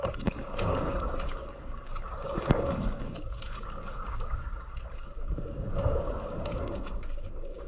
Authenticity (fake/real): fake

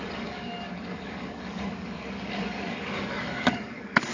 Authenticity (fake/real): fake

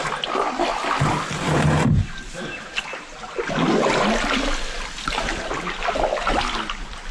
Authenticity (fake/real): real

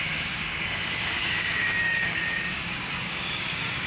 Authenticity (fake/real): fake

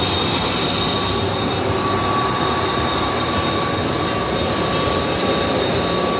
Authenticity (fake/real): real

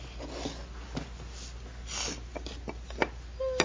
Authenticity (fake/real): real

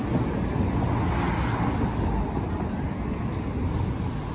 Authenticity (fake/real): real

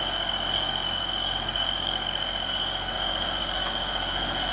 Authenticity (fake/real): fake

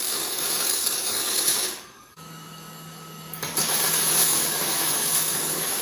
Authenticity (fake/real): fake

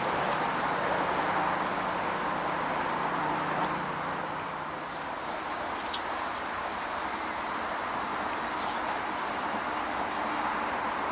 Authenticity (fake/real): real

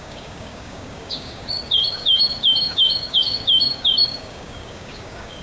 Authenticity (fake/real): fake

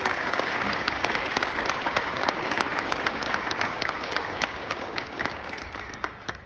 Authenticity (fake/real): fake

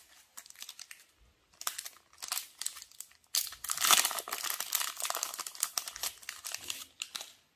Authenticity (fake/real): real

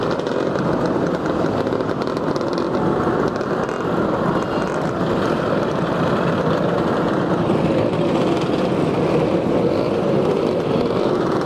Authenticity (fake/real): real